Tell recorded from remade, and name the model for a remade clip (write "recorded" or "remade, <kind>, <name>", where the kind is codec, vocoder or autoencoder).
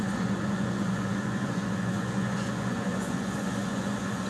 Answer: remade, vocoder, Vocos